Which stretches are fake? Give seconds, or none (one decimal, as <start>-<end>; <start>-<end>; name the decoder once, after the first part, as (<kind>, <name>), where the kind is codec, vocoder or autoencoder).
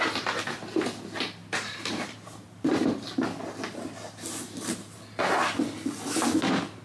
1.4-3.4 (vocoder, BigVGAN v2)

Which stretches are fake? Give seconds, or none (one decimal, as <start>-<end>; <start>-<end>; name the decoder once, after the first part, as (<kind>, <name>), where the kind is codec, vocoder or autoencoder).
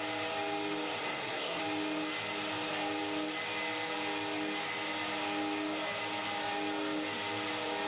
1.0-1.6 (codec, SNAC)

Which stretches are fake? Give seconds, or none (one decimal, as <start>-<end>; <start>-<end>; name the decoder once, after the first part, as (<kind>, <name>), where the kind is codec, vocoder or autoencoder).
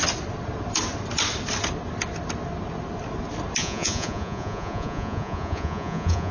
3.6-6.3 (vocoder, Vocos)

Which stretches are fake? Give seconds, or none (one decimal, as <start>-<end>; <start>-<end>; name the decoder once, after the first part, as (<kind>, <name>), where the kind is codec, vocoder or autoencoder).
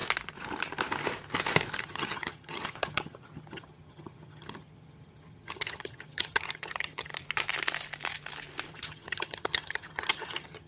1.8-7.1 (vocoder, HiFi-GAN); 8.7-10.7